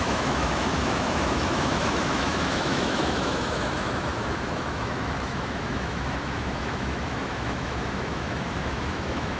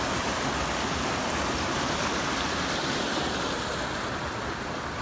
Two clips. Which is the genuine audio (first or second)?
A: second